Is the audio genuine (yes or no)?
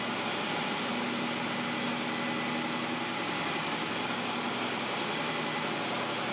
yes